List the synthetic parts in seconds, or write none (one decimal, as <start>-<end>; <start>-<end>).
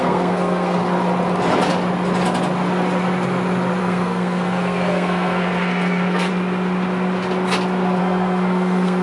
0.0-0.8; 3.8-6.3; 8.0-9.0